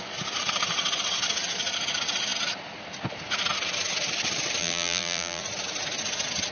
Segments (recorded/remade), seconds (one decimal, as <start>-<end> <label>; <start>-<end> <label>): 0.0-4.6 recorded; 4.6-5.4 remade; 5.4-6.5 recorded